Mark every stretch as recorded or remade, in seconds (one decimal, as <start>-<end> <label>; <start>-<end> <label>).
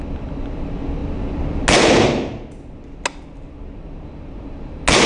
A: 0.0-5.1 recorded